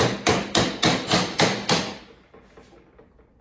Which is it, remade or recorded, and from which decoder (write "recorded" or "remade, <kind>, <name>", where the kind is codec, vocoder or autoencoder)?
recorded